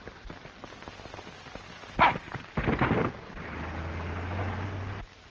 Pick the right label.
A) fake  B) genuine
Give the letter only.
B